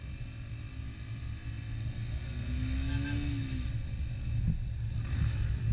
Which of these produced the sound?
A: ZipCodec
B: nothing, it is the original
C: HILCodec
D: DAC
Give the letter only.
B